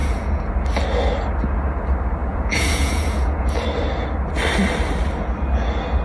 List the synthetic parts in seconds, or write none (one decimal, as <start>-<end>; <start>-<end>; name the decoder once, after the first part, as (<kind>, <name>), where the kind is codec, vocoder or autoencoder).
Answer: 0.0-0.5 (vocoder, Vocos); 2.2-3.5